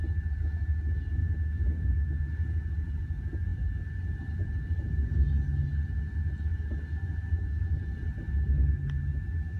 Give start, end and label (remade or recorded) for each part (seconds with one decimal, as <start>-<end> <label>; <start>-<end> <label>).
0.0-9.6 recorded